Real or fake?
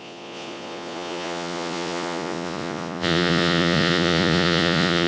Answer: fake